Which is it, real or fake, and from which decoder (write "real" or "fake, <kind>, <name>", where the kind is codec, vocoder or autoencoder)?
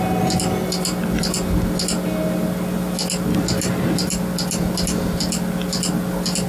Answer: real